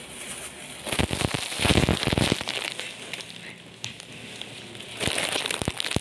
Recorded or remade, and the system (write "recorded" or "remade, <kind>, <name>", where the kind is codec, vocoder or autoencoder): recorded